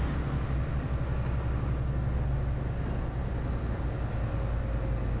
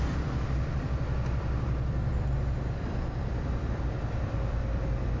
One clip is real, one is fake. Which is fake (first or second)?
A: second